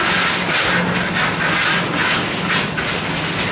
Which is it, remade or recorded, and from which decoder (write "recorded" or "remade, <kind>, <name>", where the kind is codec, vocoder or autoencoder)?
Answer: recorded